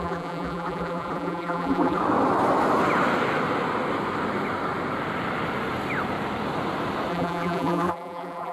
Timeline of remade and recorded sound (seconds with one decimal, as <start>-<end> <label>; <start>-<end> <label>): 0.0-2.0 remade; 2.0-7.1 recorded; 7.1-8.5 remade